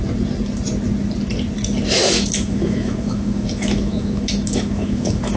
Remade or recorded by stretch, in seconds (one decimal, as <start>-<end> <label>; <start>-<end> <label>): 0.0-2.0 recorded; 2.0-5.4 remade